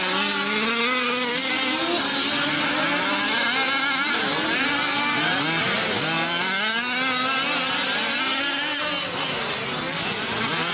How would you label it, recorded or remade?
recorded